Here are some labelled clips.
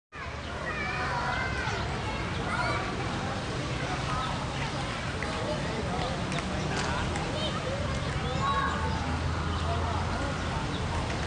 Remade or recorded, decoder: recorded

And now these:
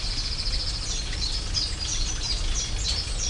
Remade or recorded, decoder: recorded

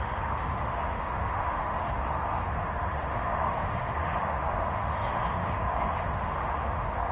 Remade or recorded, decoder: remade, autoencoder, DAC-VAE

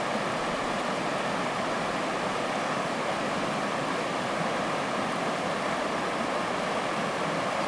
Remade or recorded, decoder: recorded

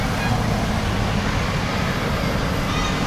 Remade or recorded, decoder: recorded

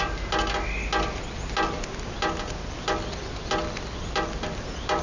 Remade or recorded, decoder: recorded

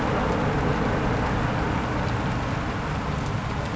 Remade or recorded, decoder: recorded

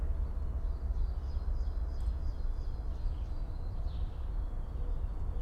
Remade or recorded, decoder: recorded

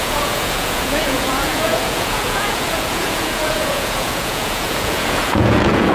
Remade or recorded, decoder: remade, vocoder, Vocos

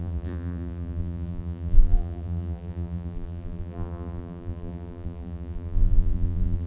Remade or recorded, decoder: remade, vocoder, BigVGAN v2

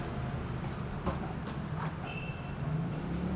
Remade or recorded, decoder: recorded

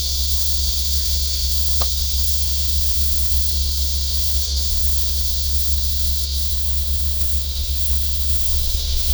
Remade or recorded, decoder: remade, autoencoder, DAC-VAE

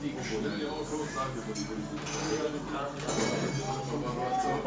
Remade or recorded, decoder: recorded